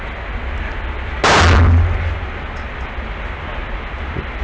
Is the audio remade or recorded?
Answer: recorded